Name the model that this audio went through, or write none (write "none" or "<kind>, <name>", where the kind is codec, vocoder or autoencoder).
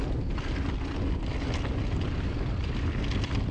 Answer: none